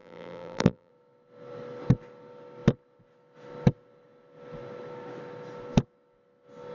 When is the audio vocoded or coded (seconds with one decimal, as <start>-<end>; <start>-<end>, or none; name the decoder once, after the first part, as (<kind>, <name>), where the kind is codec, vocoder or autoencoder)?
0.0-0.9 (vocoder, BigVGAN v2)